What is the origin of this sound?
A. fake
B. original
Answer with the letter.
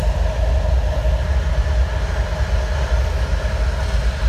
B